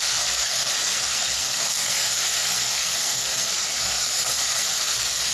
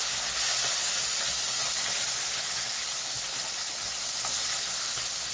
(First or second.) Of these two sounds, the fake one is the first